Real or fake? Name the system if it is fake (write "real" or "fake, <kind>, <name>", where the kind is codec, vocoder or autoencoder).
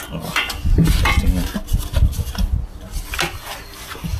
real